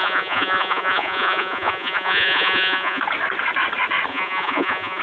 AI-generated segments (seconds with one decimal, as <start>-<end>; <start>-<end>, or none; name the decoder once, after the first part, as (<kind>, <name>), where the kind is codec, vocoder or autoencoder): 0.0-3.0 (vocoder, Vocos); 4.1-5.0